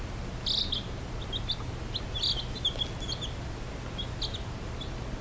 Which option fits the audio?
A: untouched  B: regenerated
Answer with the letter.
A